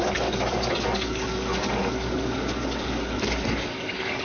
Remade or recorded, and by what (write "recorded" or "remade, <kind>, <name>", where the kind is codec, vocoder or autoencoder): remade, codec, DAC